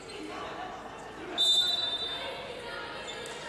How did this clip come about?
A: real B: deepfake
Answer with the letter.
A